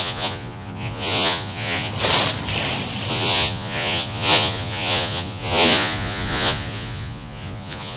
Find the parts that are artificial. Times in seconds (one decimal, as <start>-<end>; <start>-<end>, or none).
0.0-1.9; 3.1-8.0

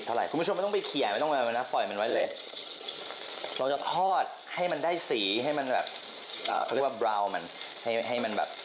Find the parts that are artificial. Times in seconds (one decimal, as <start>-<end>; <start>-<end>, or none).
2.1-3.0; 3.4-4.1; 6.3-6.8

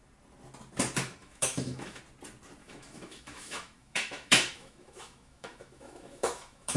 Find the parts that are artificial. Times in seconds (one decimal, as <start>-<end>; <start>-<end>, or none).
1.2-2.0; 2.6-6.8

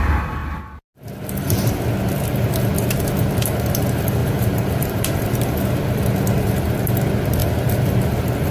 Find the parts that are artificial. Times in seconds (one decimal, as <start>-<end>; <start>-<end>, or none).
4.2-5.8

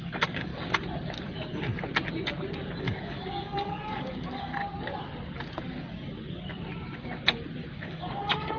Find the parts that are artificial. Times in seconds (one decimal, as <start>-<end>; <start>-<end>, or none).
0.0-0.5; 2.8-4.5; 7.7-8.6

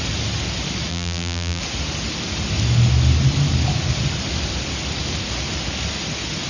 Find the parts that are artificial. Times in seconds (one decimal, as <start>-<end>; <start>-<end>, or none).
0.9-1.6